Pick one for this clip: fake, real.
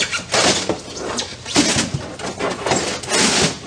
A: real